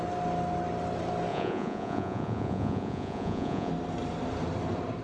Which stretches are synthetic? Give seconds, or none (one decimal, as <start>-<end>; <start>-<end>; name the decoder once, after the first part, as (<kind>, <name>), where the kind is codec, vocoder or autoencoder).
1.3-3.7 (vocoder, Vocos)